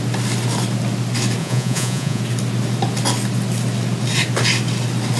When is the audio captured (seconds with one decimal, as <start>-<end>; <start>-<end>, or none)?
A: 0.0-1.4; 2.2-5.2

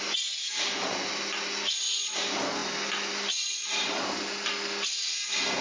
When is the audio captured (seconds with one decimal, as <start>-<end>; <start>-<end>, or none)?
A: 0.0-5.6

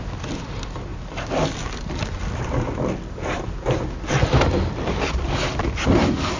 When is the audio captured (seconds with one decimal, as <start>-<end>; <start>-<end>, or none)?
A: 0.0-6.4

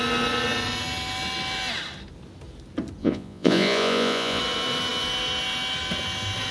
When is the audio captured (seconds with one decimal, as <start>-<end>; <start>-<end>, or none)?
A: 0.0-3.0; 4.4-6.5

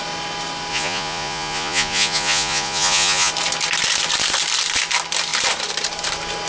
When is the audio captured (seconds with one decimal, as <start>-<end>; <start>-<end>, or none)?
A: 0.0-0.7; 3.3-6.5